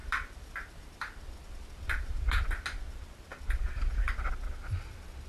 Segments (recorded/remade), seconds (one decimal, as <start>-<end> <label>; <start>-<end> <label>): 0.0-2.4 remade; 2.4-3.3 recorded; 3.3-3.8 remade; 3.8-5.3 recorded